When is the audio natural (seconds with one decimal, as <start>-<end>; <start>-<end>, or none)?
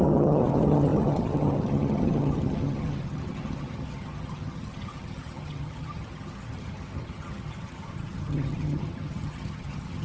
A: none